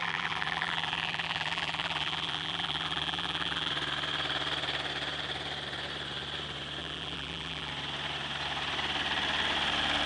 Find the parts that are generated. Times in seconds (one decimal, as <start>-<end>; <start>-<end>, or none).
0.0-3.7; 6.8-7.7